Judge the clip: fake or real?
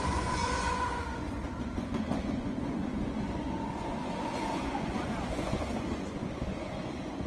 fake